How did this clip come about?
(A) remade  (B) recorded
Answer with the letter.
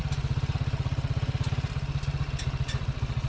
B